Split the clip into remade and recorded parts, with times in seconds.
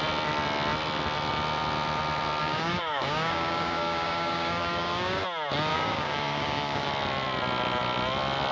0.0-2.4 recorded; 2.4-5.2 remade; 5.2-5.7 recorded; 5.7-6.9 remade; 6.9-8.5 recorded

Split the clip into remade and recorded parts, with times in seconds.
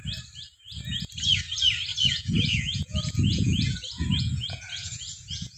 0.0-1.9 recorded; 1.9-5.6 remade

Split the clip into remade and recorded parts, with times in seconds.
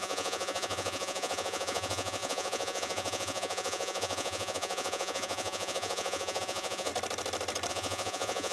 0.0-6.9 remade; 6.9-7.7 recorded; 7.7-8.5 remade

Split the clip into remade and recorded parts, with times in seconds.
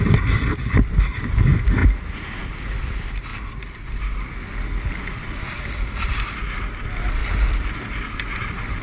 0.0-8.8 recorded